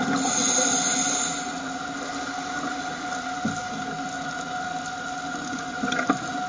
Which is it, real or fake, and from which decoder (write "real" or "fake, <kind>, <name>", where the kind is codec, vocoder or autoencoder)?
real